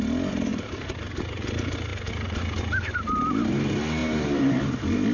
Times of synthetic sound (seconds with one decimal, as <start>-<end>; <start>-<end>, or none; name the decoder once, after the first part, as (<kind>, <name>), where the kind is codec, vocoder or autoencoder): 0.5-1.2 (vocoder, BigVGAN v2); 4.0-4.6